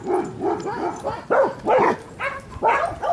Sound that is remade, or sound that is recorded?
recorded